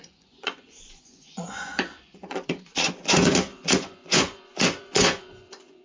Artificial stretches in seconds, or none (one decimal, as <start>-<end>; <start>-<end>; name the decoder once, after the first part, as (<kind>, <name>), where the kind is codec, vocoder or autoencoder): 0.0-5.8 (vocoder, Vocos)